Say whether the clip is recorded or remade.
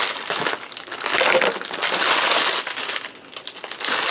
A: recorded